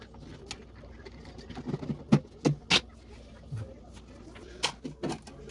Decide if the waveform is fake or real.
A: real